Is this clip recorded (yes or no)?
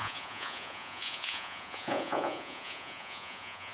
no